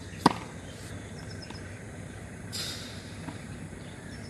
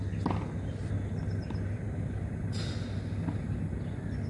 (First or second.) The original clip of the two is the second